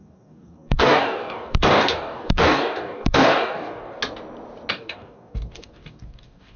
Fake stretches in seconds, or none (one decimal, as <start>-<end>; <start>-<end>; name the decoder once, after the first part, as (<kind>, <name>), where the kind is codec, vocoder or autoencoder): 0.0-4.0 (codec, DAC); 4.7-6.6